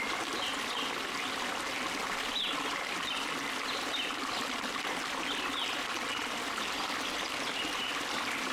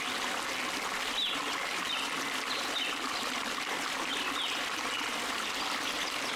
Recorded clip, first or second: second